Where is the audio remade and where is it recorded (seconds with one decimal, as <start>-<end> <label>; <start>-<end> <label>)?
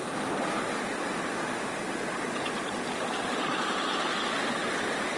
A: 0.0-5.2 recorded